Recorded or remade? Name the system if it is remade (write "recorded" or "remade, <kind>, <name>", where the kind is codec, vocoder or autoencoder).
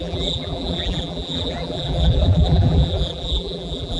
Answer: remade, vocoder, BigVGAN v2